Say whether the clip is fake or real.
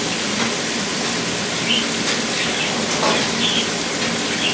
real